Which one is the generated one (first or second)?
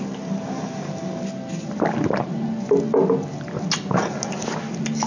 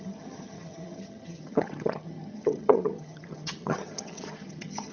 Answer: second